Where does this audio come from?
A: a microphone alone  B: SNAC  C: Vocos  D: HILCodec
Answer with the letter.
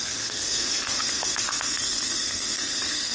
B